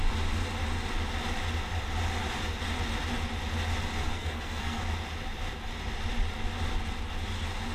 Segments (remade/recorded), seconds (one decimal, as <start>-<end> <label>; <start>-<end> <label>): 0.0-4.1 recorded; 4.1-4.8 remade; 4.8-7.7 recorded